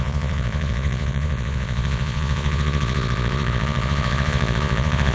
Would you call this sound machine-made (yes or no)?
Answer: yes